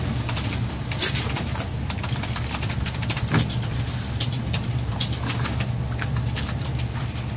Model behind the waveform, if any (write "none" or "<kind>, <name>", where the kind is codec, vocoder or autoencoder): none